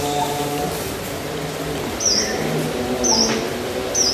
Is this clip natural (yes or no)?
yes